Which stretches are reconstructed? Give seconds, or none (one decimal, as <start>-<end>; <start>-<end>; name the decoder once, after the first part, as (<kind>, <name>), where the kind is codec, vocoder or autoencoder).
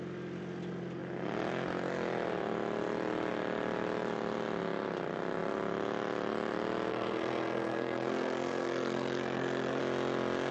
6.9-9.8 (codec, SNAC)